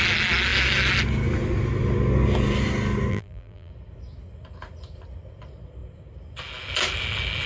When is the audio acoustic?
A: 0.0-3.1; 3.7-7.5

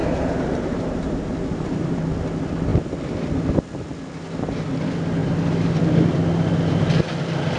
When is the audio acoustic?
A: 2.0-7.6